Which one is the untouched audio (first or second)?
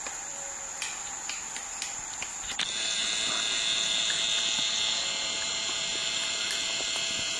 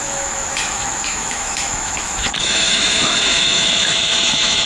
first